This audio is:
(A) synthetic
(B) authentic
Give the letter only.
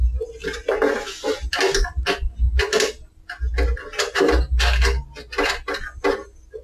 B